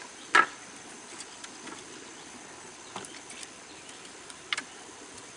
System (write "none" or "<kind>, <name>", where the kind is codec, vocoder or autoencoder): none